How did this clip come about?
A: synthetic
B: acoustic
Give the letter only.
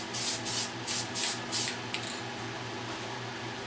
B